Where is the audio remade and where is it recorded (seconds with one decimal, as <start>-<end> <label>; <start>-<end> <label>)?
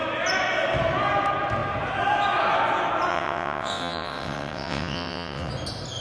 0.0-3.1 recorded; 3.1-5.5 remade; 5.5-6.0 recorded